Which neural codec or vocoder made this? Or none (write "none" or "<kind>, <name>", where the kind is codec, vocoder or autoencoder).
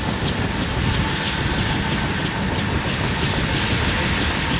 none